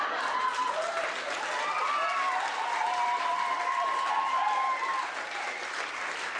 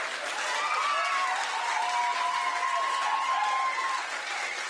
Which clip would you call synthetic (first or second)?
first